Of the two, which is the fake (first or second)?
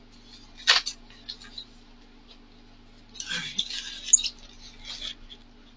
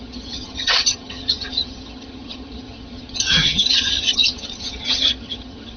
second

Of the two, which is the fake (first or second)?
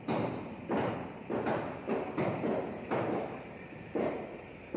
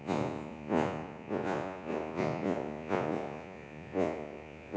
second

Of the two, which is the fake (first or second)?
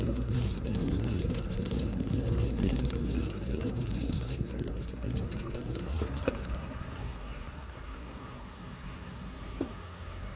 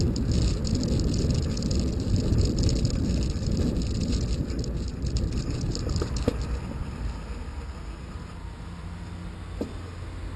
first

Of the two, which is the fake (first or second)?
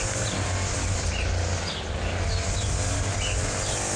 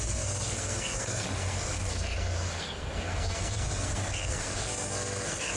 second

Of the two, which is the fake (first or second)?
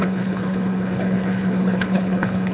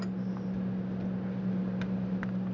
first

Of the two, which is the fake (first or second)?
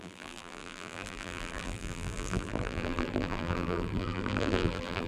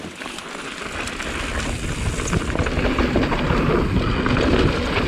first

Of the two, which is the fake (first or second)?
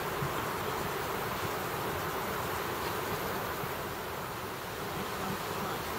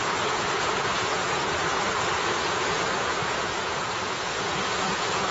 second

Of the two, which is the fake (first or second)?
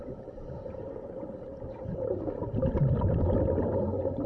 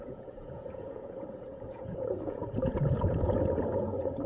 second